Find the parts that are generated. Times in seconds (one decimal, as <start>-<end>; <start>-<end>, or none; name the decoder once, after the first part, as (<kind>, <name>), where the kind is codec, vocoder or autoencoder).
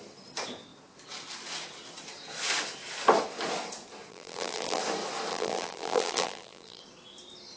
4.1-4.8 (vocoder, BigVGAN v2); 5.3-6.8